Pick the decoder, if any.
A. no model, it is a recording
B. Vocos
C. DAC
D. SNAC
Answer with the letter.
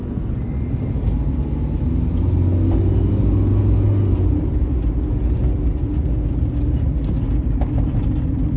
A